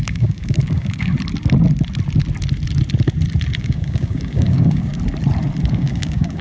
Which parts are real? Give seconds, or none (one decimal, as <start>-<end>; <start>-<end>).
1.1-3.6; 4.9-5.7